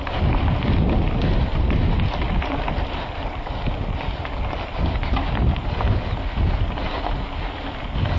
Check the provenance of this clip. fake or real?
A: real